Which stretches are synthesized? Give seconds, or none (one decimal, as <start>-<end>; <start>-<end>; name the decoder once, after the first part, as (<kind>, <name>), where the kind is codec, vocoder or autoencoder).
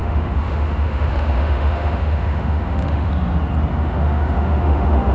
0.0-3.1 (autoencoder, DAC-VAE); 3.7-5.1